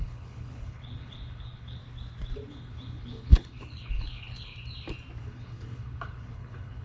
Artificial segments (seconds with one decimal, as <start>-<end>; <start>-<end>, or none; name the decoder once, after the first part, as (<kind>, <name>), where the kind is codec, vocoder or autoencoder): 0.0-1.8 (codec, HILCodec); 2.5-4.5; 5.2-6.8